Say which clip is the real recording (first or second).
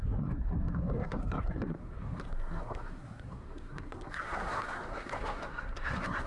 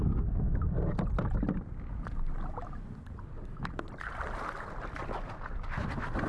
second